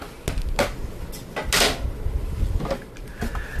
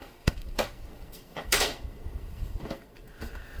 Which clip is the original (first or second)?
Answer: first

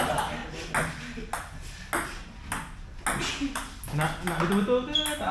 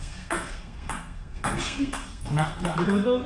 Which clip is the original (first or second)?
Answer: first